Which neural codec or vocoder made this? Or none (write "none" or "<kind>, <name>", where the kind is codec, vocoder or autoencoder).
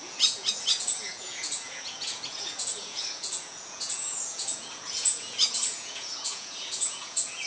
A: vocoder, Vocos